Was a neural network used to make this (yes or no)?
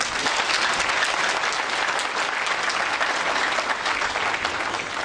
no